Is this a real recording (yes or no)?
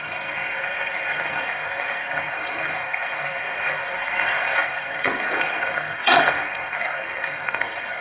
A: no